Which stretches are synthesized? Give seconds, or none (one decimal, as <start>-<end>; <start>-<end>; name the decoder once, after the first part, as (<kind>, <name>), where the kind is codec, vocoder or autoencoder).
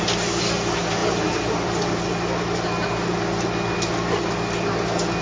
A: none